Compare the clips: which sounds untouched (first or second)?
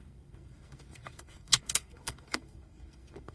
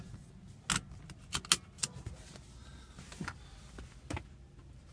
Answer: second